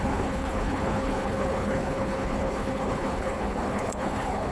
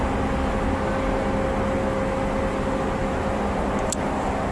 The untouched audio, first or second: second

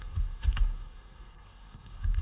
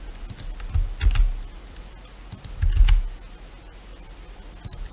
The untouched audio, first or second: second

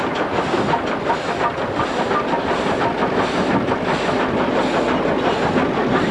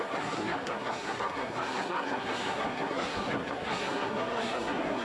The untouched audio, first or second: first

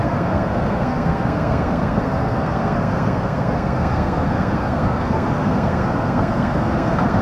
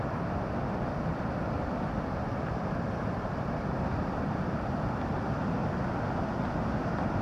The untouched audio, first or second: second